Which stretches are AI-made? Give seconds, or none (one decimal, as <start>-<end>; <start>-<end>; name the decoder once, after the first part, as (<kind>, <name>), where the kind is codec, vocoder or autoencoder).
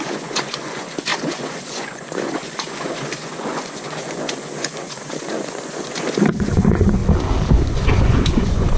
0.0-7.0 (vocoder, Vocos); 7.5-8.8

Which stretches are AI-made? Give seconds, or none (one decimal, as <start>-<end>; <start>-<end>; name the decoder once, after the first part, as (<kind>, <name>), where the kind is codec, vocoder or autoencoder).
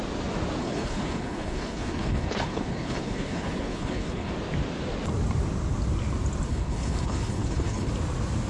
0.6-4.3 (codec, HILCodec); 6.5-7.9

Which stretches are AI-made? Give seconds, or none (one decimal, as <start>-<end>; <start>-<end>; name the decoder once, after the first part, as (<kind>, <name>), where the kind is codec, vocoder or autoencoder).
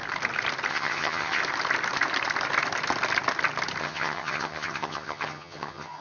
0.7-1.4 (vocoder, HiFi-GAN); 3.8-6.0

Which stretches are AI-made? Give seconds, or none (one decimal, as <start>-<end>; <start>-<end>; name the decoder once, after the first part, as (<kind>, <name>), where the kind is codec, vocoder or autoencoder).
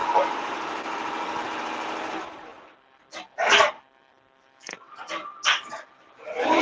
none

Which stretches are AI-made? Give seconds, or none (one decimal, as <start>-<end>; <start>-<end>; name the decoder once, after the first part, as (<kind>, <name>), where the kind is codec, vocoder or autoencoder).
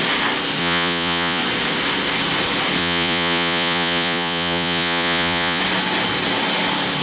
0.6-1.4 (vocoder, Vocos); 2.8-5.6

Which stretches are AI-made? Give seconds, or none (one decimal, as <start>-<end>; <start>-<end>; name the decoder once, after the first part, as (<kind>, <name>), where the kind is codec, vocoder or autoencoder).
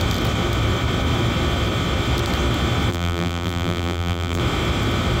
2.9-4.4 (vocoder, BigVGAN v2)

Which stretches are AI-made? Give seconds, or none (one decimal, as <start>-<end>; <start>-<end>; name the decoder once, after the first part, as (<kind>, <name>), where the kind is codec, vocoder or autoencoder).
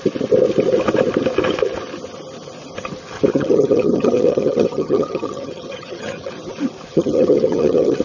3.3-6.3 (vocoder, HiFi-GAN); 6.9-8.0